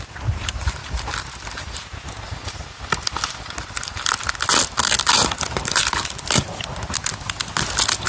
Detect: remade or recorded recorded